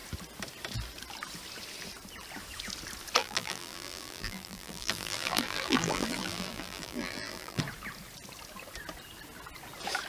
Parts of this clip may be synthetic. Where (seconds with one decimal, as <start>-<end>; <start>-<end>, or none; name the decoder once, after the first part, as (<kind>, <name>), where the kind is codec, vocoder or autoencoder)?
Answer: 3.2-7.6 (vocoder, BigVGAN v2)